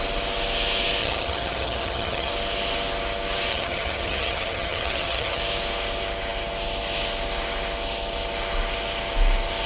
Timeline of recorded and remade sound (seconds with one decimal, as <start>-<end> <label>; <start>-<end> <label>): 0.0-1.0 recorded; 1.0-2.3 remade; 2.3-3.5 recorded; 3.5-5.4 remade; 5.4-9.7 recorded